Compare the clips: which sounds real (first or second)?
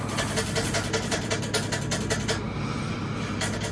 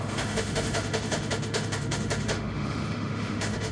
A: first